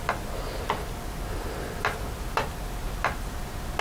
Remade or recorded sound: recorded